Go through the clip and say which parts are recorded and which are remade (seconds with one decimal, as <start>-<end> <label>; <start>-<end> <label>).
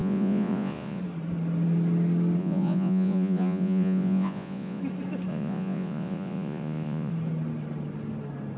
0.0-1.0 remade; 1.0-2.4 recorded; 2.4-4.8 remade; 4.8-5.3 recorded; 5.3-7.1 remade; 7.1-8.6 recorded